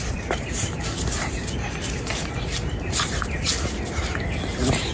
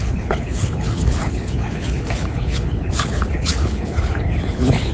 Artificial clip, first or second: second